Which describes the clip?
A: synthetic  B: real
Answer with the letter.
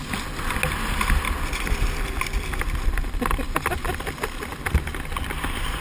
B